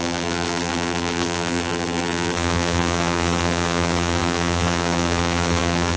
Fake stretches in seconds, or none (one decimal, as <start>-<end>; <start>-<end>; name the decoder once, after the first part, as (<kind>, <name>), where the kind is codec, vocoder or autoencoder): 0.0-6.0 (vocoder, BigVGAN v2)